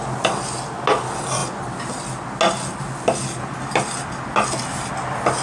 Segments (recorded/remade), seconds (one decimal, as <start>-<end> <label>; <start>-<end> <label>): 0.0-5.4 recorded